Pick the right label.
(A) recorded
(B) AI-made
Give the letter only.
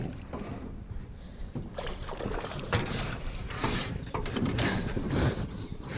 B